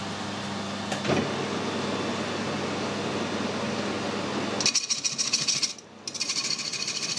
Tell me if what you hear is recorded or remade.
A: recorded